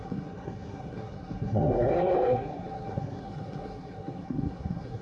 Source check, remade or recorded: remade